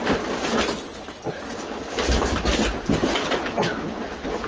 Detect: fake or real real